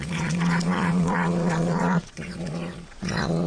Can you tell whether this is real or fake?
fake